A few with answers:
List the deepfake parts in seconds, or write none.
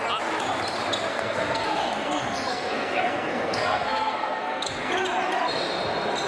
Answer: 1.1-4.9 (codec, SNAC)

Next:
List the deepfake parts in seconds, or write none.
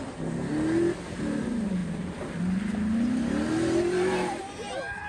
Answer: none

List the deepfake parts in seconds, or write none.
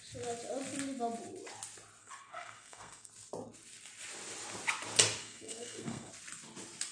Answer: 2.0-3.1 (codec, SNAC); 5.2-6.1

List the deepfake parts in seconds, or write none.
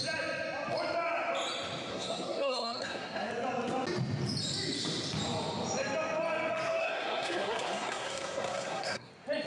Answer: 1.9-3.3 (codec, SNAC); 6.8-9.1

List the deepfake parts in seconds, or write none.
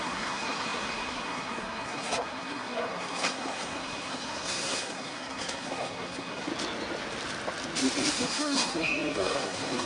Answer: 0.0-6.5 (codec, SNAC); 8.1-9.9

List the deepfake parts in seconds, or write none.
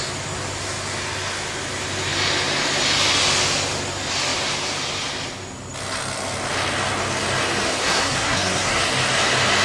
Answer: 7.8-8.8 (codec, SNAC)